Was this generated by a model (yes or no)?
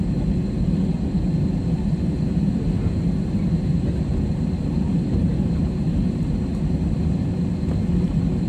yes